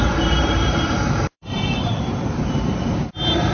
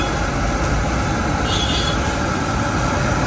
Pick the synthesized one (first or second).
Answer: first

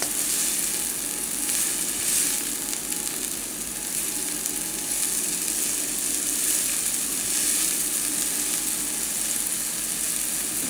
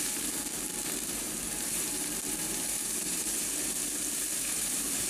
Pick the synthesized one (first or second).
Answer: second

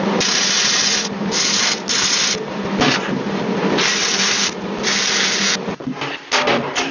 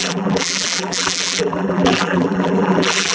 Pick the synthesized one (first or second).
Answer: second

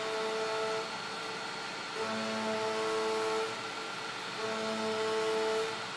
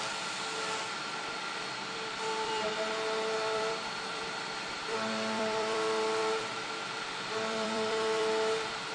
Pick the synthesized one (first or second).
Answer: second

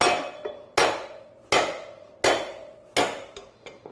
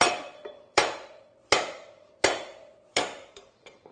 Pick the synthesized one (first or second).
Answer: second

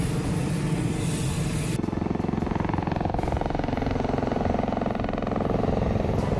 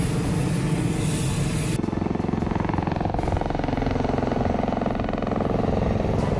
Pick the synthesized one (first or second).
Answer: first